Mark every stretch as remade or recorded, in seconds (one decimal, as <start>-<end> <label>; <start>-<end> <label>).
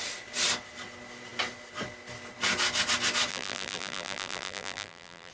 0.0-3.3 recorded; 3.3-5.3 remade